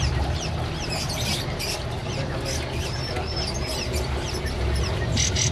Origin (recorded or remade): recorded